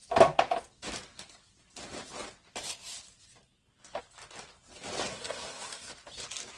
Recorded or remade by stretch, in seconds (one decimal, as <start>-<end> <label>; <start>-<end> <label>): 0.0-5.1 recorded; 5.1-5.9 remade; 5.9-6.6 recorded